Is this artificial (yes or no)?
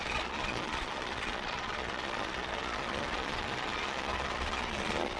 yes